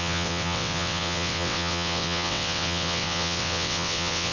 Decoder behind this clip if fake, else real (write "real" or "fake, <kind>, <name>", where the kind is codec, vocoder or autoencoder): fake, vocoder, WaveNeXt